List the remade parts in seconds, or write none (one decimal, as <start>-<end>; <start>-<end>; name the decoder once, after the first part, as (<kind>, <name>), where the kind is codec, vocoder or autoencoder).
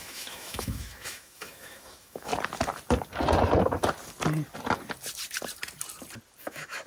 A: 0.0-2.3 (autoencoder, DAC-VAE); 6.4-6.9